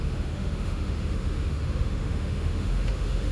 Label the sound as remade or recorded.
remade